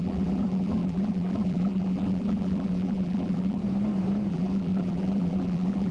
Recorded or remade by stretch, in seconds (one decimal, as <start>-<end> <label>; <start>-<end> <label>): 0.0-3.6 remade; 3.6-4.3 recorded; 4.3-5.9 remade

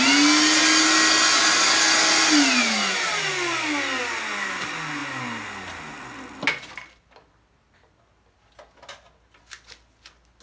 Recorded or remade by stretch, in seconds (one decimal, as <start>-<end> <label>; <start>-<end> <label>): 0.0-10.4 recorded